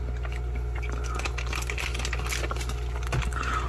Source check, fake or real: real